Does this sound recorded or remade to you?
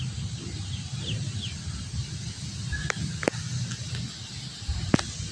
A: recorded